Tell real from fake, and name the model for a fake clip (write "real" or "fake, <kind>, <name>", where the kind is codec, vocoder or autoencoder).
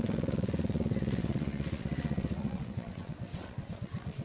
fake, vocoder, WaveNeXt